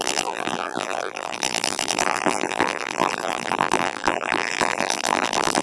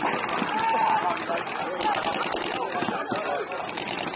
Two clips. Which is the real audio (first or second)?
second